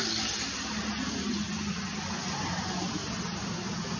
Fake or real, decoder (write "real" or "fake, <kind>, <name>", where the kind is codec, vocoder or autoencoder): real